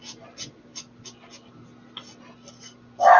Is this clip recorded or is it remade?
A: recorded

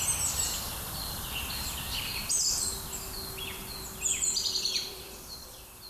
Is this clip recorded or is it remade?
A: recorded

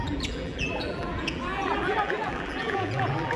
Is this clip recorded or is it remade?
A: remade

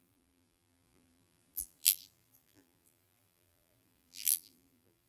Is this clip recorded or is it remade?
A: remade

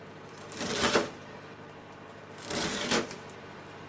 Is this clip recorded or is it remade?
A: remade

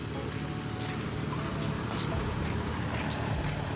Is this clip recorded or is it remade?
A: recorded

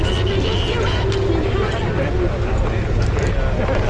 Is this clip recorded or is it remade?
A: recorded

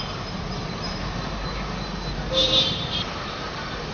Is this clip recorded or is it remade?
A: remade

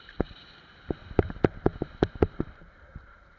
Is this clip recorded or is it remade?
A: remade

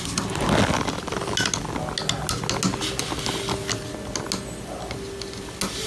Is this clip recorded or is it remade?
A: recorded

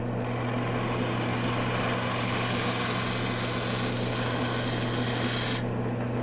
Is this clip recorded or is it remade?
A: recorded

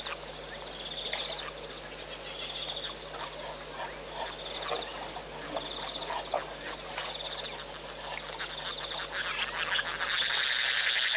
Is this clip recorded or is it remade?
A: recorded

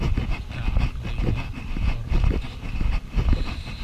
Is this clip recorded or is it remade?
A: recorded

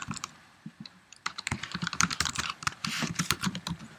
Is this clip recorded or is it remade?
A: remade